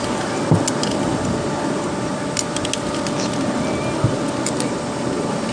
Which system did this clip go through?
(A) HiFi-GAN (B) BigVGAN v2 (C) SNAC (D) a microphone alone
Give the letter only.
D